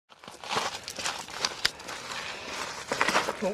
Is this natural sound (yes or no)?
yes